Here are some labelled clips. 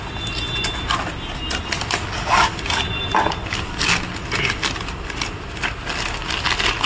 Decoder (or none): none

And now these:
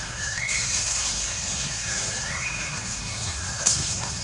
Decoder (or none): codec, SNAC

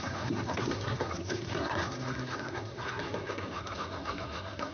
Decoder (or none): codec, SNAC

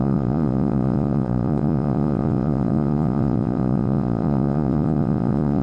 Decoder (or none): vocoder, Vocos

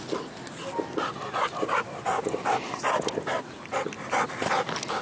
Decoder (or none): none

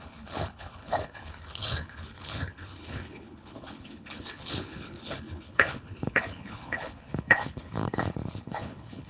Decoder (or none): codec, HILCodec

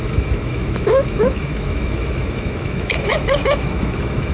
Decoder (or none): autoencoder, DAC-VAE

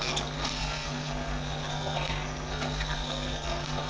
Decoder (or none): codec, SNAC